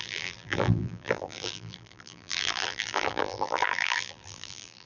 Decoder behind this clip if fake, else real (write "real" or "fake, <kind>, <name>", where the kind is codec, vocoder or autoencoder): fake, vocoder, BigVGAN v2